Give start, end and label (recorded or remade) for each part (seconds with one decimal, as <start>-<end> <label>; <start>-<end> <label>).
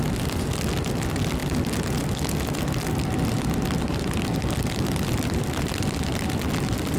0.0-7.0 recorded